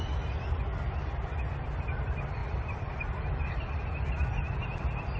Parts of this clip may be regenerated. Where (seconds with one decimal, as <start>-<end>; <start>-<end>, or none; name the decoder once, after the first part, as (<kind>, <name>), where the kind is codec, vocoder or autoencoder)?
2.4-3.2 (vocoder, BigVGAN v2)